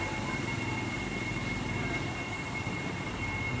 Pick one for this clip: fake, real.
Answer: real